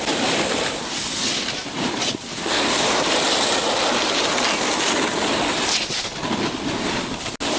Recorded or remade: recorded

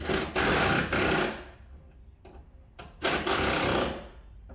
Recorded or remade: recorded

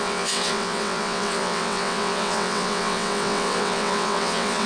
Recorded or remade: remade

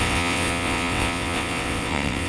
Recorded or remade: remade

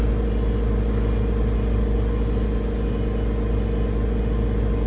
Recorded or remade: recorded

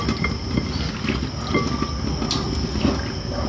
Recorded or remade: recorded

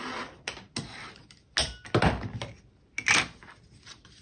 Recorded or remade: recorded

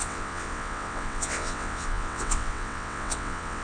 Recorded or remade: remade